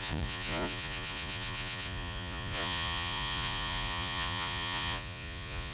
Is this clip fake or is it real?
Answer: fake